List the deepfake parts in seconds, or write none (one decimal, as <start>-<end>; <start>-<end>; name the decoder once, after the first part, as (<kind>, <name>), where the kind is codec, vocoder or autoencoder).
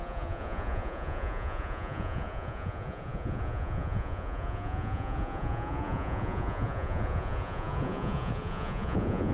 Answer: 0.0-9.3 (vocoder, Vocos)